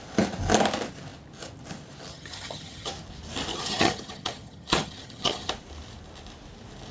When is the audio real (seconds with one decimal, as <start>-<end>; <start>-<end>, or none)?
0.0-2.1; 2.9-3.5; 5.5-6.9